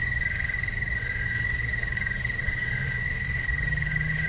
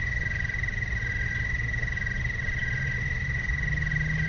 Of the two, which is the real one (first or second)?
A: second